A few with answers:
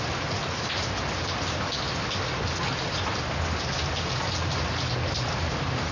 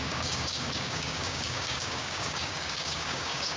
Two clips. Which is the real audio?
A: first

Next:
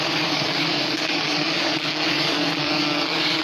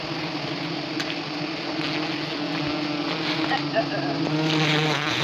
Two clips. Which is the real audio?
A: second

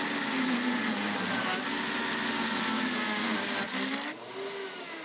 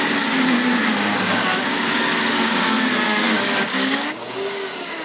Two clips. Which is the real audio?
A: first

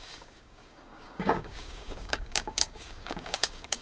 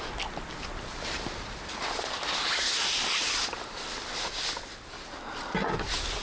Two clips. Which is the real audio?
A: second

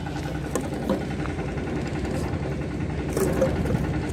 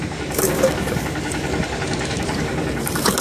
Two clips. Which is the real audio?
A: first